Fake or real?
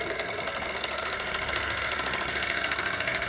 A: fake